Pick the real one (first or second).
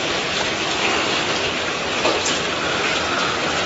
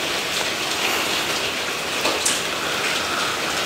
second